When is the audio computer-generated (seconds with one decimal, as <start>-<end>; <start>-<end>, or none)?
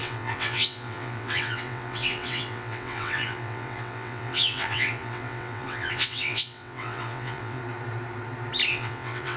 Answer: 0.0-7.6; 8.7-9.4